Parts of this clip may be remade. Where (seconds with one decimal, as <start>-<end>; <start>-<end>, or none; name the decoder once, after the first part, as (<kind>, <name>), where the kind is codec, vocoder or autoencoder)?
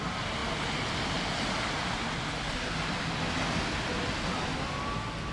none